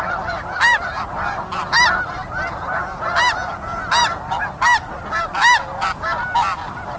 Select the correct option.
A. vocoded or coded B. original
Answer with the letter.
B